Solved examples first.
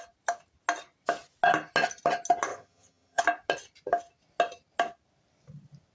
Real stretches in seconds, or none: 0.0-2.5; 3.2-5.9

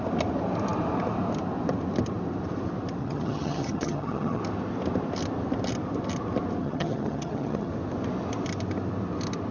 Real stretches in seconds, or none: 0.0-3.0; 4.4-6.6; 7.7-9.5

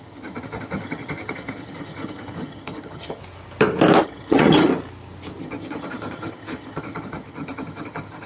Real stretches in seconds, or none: 3.2-4.0; 4.7-5.4

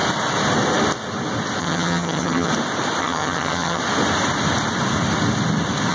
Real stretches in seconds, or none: 0.0-1.6; 2.5-3.0; 3.8-5.9

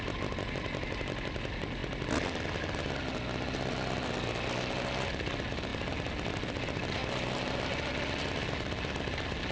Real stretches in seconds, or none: 0.0-9.5

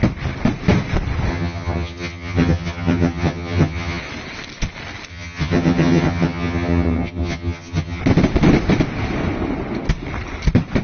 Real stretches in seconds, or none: 0.0-1.3; 4.0-5.1; 8.0-10.8

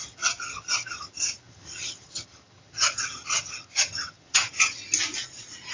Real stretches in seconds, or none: 4.8-5.7

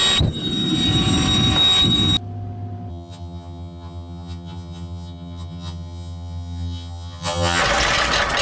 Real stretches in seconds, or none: 0.0-2.9; 7.6-8.4